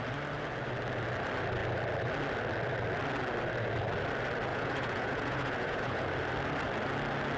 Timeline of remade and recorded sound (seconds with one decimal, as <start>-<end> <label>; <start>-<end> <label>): 0.0-4.5 recorded; 4.5-6.1 remade; 6.1-7.4 recorded